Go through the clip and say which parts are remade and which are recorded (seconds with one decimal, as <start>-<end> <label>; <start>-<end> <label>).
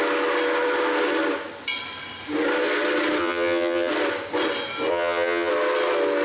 0.0-3.2 recorded; 3.2-3.9 remade; 3.9-4.9 recorded; 4.9-5.5 remade; 5.5-6.2 recorded